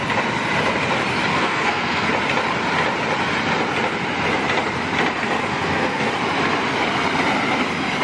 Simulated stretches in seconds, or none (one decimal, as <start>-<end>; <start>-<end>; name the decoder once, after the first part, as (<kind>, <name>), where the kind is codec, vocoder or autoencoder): 1.3-2.1 (codec, SNAC); 5.4-6.1